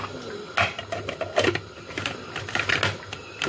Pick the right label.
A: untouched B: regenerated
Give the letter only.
A